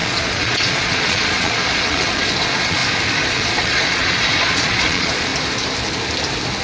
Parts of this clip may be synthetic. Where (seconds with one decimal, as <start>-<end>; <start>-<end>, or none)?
0.0-2.8; 3.3-5.3